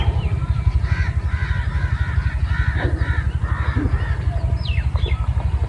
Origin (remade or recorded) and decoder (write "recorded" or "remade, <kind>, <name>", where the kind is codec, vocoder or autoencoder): recorded